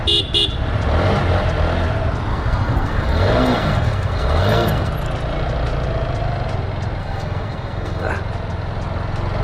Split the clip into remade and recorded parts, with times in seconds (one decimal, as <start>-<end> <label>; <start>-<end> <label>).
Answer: 0.0-2.3 recorded; 2.3-4.9 remade; 4.9-7.0 recorded; 7.0-8.1 remade; 8.1-9.4 recorded

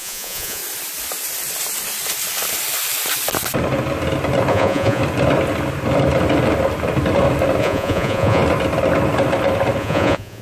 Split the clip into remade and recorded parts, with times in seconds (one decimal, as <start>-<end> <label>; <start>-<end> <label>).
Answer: 0.0-0.6 remade; 0.6-4.5 recorded; 4.5-5.0 remade; 5.0-7.6 recorded; 7.6-8.4 remade; 8.4-9.8 recorded; 9.8-10.4 remade

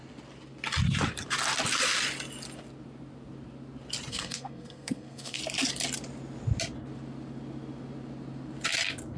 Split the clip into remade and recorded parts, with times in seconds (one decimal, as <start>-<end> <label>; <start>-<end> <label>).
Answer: 0.0-4.1 recorded; 4.1-5.4 remade; 5.4-9.2 recorded

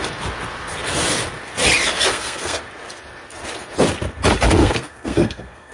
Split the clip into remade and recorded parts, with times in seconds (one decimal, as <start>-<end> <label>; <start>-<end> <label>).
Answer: 0.0-2.1 recorded; 2.1-2.6 remade; 2.6-4.6 recorded; 4.6-5.7 remade

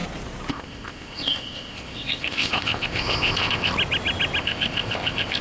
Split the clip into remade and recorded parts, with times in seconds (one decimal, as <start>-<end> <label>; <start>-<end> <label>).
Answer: 0.0-0.5 recorded; 0.5-3.7 remade; 3.7-4.4 recorded; 4.4-5.4 remade

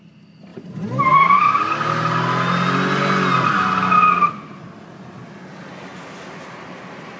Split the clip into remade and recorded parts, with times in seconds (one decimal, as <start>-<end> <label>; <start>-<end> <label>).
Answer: 0.0-0.5 recorded; 0.5-1.6 remade; 1.6-7.2 recorded

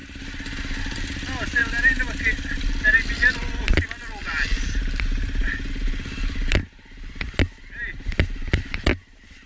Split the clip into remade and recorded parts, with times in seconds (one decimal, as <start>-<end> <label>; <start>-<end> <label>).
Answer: 0.0-9.5 recorded

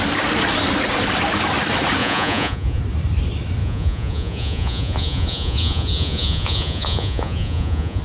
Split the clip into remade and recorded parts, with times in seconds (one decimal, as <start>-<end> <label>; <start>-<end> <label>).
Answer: 0.0-2.0 recorded; 2.0-2.8 remade; 2.8-3.6 recorded; 3.6-8.0 remade